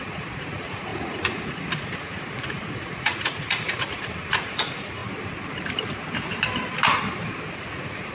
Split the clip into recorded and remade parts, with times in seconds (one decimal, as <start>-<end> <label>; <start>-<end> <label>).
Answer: 0.0-5.0 remade; 5.0-7.5 recorded; 7.5-8.1 remade